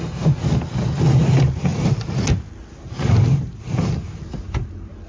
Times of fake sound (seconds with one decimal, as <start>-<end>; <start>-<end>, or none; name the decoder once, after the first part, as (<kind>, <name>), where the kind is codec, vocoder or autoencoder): none